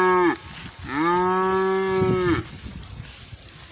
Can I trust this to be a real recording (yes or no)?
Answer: yes